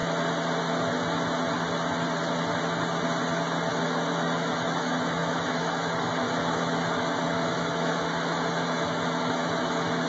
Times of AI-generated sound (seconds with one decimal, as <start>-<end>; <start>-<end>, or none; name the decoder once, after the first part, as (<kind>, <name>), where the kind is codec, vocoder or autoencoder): 3.7-10.1 (autoencoder, DAC-VAE)